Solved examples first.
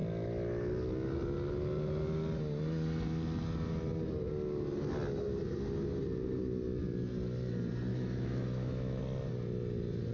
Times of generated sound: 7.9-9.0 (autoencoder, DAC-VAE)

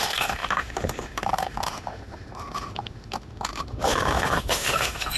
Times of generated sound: 0.0-5.2 (autoencoder, DAC-VAE)

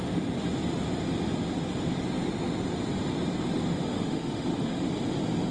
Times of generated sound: 3.9-4.9 (autoencoder, DAC-VAE)

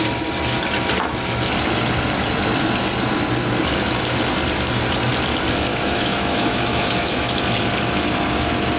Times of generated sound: 5.7-7.4 (autoencoder, DAC-VAE)